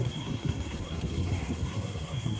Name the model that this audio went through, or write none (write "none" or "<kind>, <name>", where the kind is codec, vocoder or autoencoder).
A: codec, SNAC